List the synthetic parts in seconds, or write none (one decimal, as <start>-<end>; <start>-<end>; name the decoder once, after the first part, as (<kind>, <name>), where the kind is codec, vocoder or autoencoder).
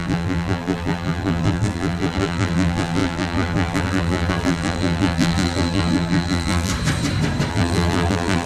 0.0-6.7 (vocoder, BigVGAN v2); 7.5-8.5